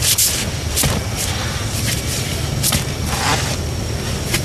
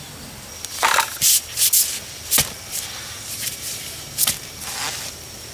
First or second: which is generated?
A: first